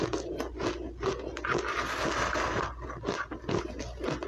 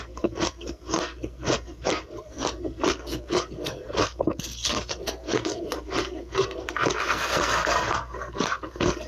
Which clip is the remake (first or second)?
second